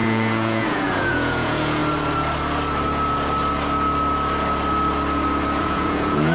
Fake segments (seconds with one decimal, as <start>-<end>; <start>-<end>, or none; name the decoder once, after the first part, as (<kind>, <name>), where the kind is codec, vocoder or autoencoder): 0.0-1.8 (vocoder, Vocos); 5.6-6.3